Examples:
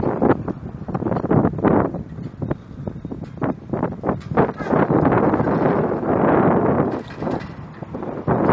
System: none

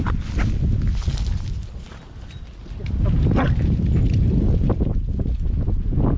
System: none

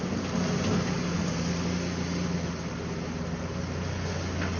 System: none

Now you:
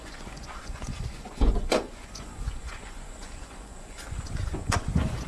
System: vocoder, Vocos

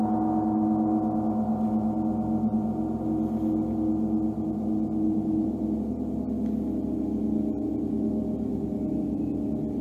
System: none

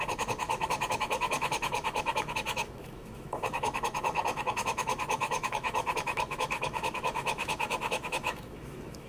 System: autoencoder, DAC-VAE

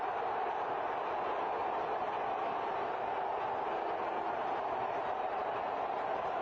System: none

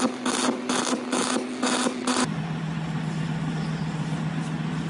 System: none